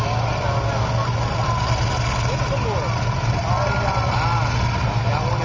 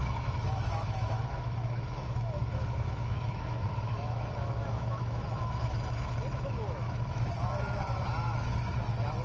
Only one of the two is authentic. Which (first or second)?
first